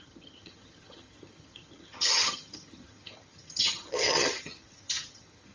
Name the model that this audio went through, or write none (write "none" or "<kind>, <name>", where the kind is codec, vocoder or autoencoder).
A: vocoder, HiFi-GAN